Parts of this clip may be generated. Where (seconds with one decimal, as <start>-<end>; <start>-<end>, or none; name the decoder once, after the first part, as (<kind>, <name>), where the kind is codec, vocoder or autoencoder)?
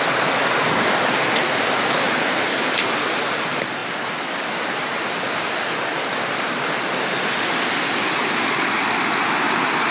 none